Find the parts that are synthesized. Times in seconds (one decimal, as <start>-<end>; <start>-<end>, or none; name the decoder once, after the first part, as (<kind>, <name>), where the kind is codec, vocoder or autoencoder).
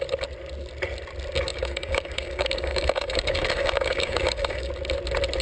1.5-4.7 (codec, DAC)